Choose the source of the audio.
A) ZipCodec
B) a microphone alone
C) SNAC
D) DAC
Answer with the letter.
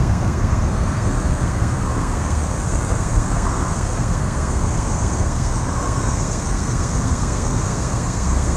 C